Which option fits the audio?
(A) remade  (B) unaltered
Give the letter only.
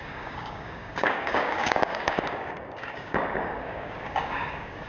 A